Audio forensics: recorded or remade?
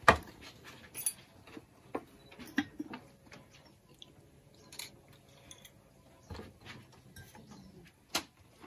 recorded